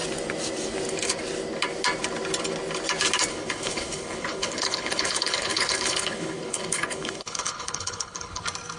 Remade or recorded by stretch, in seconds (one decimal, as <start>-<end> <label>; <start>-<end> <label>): 0.0-3.3 recorded; 3.3-8.4 remade; 8.4-8.8 recorded